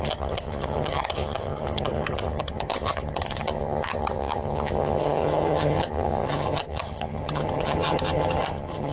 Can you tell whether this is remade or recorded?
remade